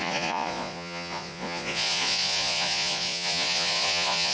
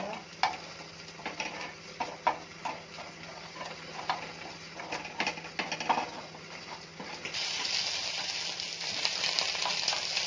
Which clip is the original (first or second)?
second